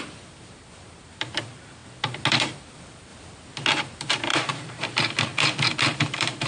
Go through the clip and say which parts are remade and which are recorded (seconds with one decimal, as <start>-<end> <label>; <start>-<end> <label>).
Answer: 0.0-1.8 remade; 1.8-2.3 recorded; 2.3-3.1 remade; 3.1-3.7 recorded; 3.7-5.3 remade; 5.3-5.9 recorded; 5.9-6.5 remade

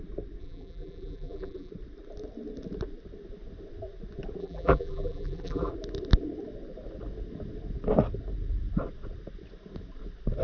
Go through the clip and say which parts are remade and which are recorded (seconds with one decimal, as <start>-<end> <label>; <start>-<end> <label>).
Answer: 0.0-0.4 recorded; 0.4-1.7 remade; 1.7-4.4 recorded; 4.4-5.7 remade; 5.7-10.4 recorded

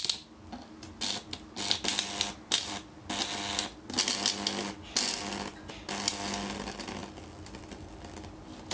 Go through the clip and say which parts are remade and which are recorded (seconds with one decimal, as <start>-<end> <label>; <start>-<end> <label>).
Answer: 0.0-8.7 recorded

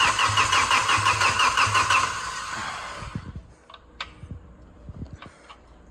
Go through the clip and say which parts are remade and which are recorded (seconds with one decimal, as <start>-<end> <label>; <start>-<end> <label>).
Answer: 0.0-5.9 recorded

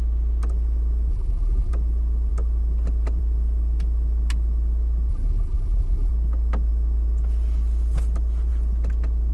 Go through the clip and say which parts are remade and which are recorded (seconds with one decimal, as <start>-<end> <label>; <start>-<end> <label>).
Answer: 0.0-1.1 recorded; 1.1-1.7 remade; 1.7-5.1 recorded; 5.1-6.1 remade; 6.1-9.3 recorded

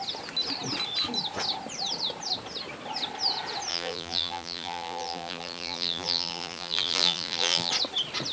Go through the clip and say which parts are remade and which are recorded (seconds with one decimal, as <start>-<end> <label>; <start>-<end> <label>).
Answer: 0.0-3.7 recorded; 3.7-7.7 remade; 7.7-8.3 recorded